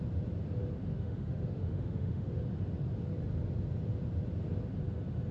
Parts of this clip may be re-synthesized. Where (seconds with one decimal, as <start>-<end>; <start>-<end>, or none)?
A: 0.9-2.4